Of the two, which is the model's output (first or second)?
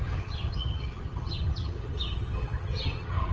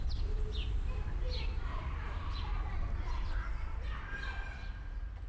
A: first